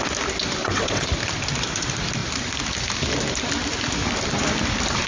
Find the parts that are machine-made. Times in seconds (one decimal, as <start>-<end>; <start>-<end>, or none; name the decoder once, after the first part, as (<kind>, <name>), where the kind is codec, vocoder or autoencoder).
0.6-1.1 (vocoder, WaveNeXt)